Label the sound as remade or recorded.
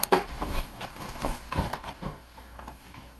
remade